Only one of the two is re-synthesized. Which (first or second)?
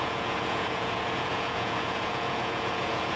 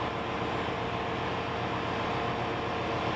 first